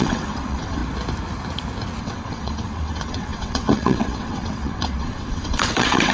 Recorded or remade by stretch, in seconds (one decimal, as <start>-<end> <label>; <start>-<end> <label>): 0.0-0.8 remade; 0.8-2.0 recorded; 2.0-6.1 remade